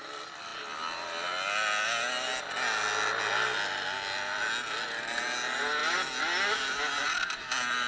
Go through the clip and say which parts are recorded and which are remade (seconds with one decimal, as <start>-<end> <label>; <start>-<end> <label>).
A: 0.0-7.9 recorded